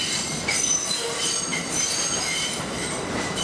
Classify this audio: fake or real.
real